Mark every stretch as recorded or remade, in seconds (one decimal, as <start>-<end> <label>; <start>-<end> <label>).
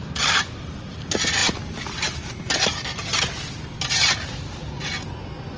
0.0-5.6 recorded